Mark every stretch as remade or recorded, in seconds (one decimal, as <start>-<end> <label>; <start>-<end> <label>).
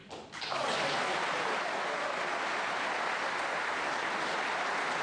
0.0-5.0 recorded